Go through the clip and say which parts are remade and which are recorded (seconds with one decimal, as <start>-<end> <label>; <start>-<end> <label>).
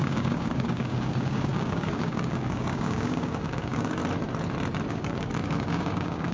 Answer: 0.0-4.0 remade; 4.0-4.9 recorded; 4.9-6.3 remade